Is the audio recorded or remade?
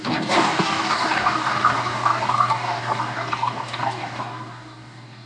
remade